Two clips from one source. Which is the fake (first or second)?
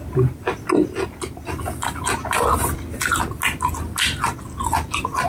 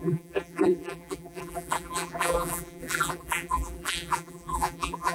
second